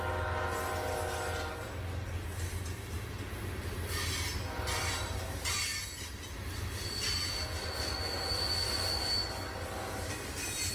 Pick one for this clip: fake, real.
real